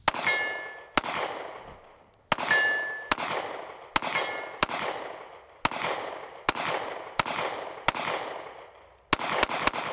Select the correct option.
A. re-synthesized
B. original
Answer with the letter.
B